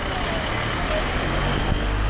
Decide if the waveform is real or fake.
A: real